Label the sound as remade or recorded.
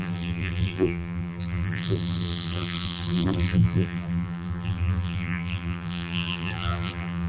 remade